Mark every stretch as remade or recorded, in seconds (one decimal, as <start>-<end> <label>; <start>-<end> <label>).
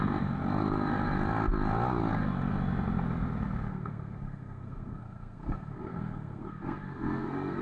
0.0-3.7 recorded; 3.7-7.6 remade